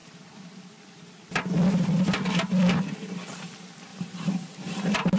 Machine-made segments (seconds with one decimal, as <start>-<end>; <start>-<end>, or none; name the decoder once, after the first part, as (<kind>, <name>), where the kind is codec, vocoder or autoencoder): 3.9-5.2 (vocoder, BigVGAN v2)